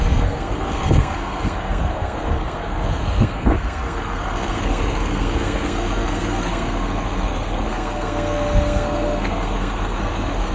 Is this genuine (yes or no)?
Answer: no